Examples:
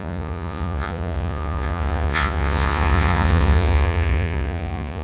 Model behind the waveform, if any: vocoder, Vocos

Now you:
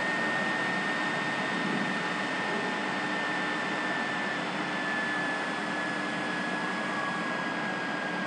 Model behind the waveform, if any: none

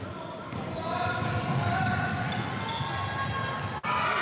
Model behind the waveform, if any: none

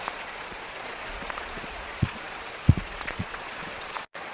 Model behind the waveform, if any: vocoder, Vocos